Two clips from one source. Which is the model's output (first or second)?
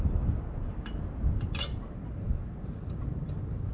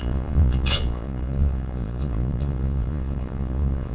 second